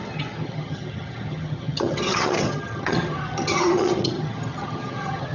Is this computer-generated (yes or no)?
yes